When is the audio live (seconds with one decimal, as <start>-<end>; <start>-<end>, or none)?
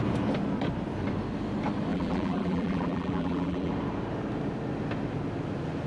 0.0-1.9; 3.7-5.9